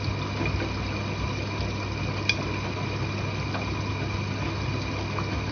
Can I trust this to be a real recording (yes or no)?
yes